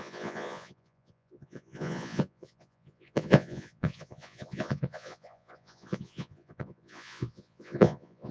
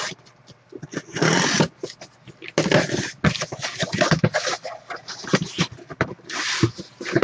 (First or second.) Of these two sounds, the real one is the second